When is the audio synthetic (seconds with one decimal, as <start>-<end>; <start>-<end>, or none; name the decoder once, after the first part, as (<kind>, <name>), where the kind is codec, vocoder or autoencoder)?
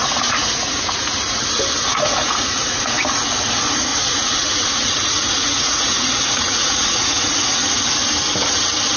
0.0-1.4 (vocoder, Vocos); 1.9-3.1; 3.9-7.8